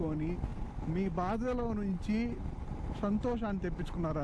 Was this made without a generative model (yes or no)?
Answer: yes